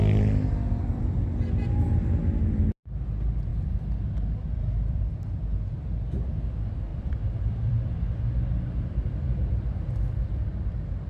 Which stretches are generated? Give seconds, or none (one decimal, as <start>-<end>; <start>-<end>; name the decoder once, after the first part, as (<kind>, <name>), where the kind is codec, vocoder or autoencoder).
3.5-5.1 (vocoder, BigVGAN v2); 6.9-10.7